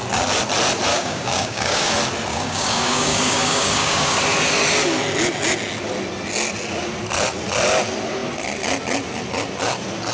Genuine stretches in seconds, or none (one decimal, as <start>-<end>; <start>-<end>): 0.0-0.9; 1.9-2.3; 4.2-10.1